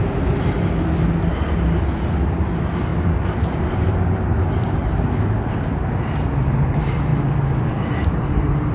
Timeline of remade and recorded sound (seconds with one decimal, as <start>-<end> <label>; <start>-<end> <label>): 0.0-2.9 recorded; 2.9-5.8 remade; 5.8-8.7 recorded